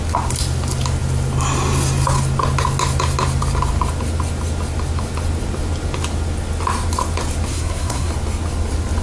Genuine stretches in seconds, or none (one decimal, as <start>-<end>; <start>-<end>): 0.0-7.5; 8.1-9.0